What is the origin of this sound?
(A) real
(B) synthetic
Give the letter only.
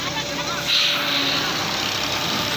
A